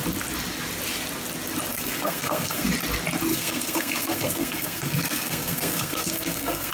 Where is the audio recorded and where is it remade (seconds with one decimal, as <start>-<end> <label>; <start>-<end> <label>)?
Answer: 0.0-1.7 recorded; 1.7-2.7 remade; 2.7-3.3 recorded; 3.3-6.7 remade